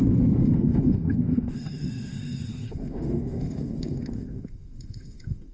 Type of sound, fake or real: fake